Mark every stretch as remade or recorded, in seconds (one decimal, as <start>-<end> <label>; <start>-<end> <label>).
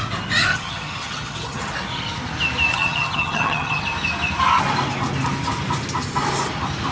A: 0.0-0.5 recorded; 0.5-1.7 remade; 1.7-2.7 recorded; 2.7-3.8 remade; 3.8-6.9 recorded